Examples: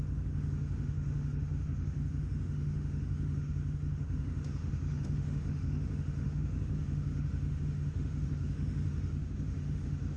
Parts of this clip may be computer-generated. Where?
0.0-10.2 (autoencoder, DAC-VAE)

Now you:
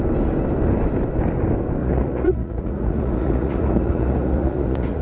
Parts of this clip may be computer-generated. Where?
1.8-5.0 (vocoder, Vocos)

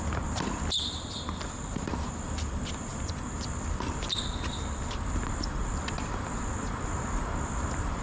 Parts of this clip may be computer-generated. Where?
none

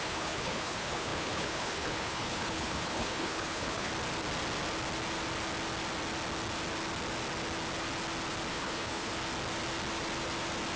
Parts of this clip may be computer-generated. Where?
0.0-3.9 (codec, HILCodec); 8.5-9.1

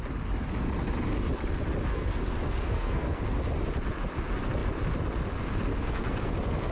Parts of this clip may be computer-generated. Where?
1.9-3.2 (codec, SNAC); 5.7-6.3

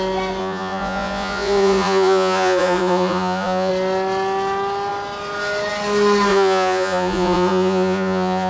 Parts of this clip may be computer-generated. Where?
0.4-3.7 (vocoder, Vocos); 6.3-8.5